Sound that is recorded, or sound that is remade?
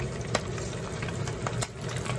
recorded